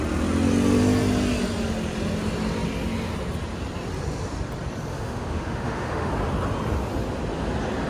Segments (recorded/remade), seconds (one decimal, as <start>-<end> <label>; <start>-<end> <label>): 0.0-4.9 recorded; 4.9-6.1 remade; 6.1-7.9 recorded